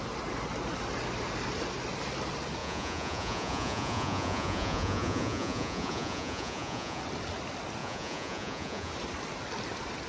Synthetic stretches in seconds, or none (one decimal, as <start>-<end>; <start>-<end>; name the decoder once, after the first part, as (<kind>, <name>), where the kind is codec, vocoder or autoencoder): 2.6-7.0 (vocoder, Vocos); 7.8-8.9